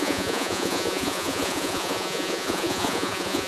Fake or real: fake